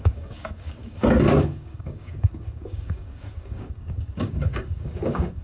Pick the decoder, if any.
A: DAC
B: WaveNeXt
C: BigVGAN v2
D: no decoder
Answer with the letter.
A